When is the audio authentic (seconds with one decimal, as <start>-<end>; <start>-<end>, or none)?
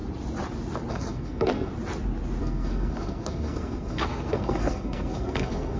0.0-0.9; 1.7-2.4